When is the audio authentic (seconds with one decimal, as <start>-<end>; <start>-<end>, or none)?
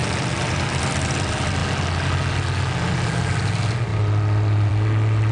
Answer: 1.6-2.9; 3.9-4.7